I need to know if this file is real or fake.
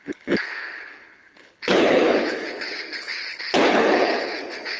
fake